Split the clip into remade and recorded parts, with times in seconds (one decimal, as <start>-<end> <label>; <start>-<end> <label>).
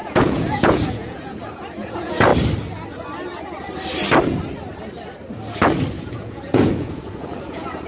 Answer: 0.0-2.3 remade; 2.3-6.1 recorded; 6.1-7.9 remade